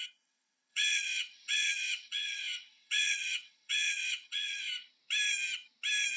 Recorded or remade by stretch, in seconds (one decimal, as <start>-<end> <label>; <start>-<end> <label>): 0.0-4.7 remade; 4.7-6.2 recorded